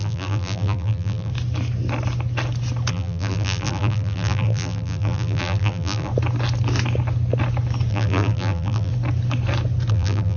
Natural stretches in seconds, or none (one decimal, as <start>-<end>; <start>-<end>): 1.3-2.9; 6.1-7.9; 8.9-9.9